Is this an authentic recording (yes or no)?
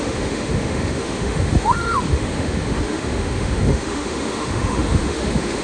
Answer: no